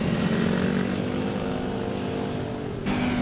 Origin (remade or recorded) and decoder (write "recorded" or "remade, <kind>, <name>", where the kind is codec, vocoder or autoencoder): recorded